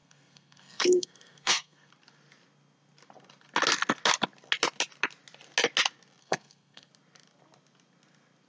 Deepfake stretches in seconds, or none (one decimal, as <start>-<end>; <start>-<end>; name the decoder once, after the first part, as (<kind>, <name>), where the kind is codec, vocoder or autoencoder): 0.0-1.9 (codec, SNAC); 6.2-6.9